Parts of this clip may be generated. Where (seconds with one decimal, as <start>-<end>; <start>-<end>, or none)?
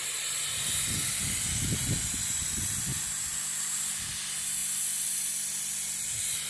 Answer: none